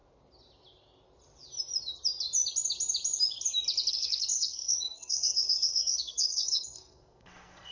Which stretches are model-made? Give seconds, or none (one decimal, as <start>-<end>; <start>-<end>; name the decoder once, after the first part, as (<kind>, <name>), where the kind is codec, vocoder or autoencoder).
3.9-7.7 (codec, SNAC)